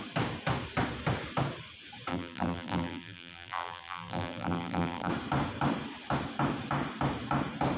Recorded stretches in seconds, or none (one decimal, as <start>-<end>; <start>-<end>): 0.0-2.1; 5.1-7.8